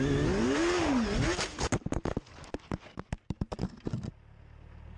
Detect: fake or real real